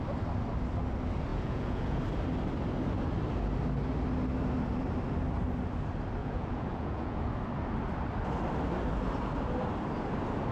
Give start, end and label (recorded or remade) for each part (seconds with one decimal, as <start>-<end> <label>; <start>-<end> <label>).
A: 0.0-1.3 recorded; 1.3-2.0 remade; 2.0-6.2 recorded; 6.2-7.2 remade; 7.2-10.5 recorded